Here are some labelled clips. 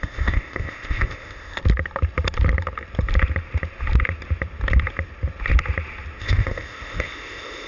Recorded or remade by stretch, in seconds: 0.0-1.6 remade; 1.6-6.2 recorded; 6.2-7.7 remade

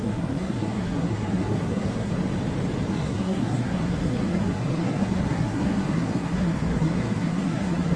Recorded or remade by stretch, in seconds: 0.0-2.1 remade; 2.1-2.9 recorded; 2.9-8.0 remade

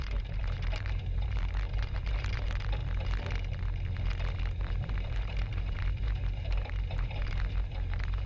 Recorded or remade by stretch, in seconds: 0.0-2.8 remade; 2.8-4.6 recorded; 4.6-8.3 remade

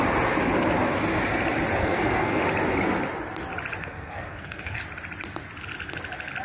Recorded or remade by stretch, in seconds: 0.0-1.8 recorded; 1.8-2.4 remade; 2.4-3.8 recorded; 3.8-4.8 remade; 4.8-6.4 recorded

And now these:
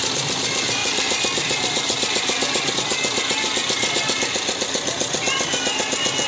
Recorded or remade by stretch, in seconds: 0.0-6.3 recorded